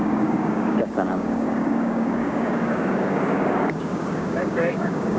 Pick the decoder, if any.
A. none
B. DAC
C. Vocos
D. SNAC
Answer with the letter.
B